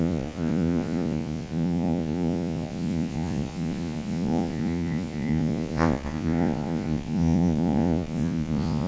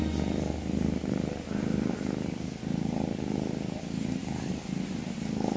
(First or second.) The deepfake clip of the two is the first